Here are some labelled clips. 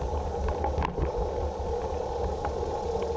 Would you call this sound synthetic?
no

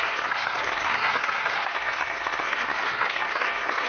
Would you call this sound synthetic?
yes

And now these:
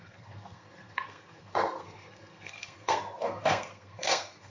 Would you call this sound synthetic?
yes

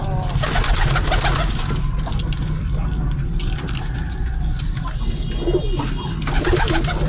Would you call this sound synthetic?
no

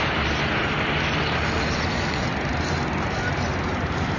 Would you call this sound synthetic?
no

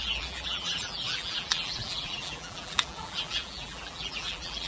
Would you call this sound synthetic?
yes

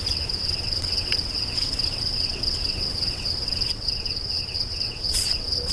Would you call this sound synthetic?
yes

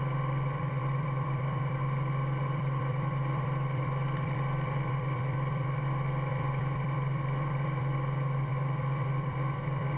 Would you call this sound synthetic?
yes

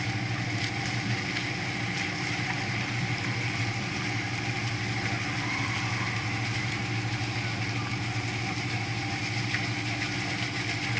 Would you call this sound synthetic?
no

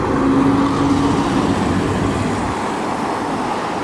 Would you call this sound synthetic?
no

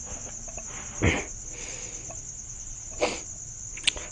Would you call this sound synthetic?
no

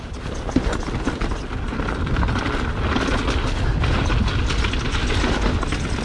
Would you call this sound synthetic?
no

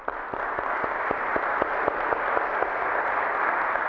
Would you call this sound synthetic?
no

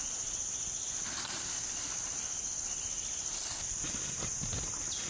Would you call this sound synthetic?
no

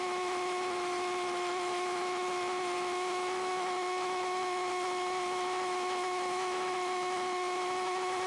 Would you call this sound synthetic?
yes